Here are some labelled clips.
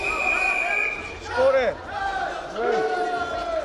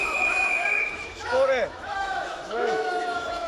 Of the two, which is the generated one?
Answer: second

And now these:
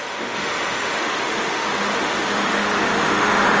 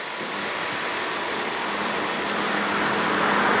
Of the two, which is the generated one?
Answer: first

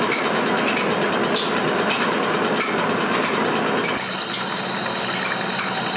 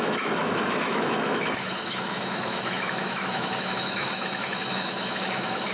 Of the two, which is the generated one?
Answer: second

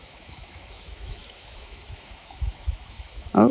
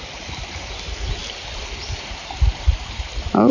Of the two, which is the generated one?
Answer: first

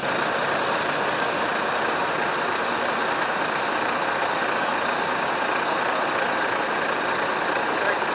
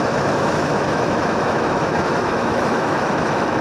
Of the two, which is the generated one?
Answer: second